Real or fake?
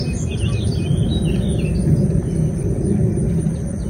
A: fake